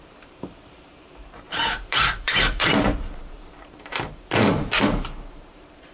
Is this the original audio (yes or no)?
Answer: no